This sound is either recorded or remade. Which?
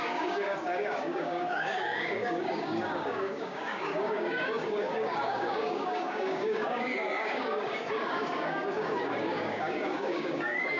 remade